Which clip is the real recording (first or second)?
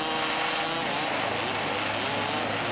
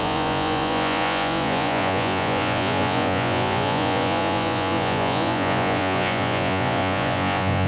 first